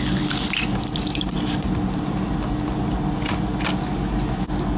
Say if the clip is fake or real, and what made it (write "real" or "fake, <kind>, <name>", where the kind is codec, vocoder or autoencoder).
real